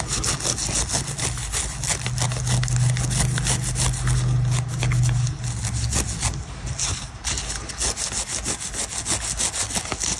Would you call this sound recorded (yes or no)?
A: yes